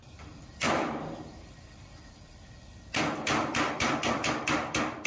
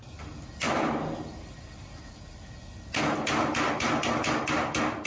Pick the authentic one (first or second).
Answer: second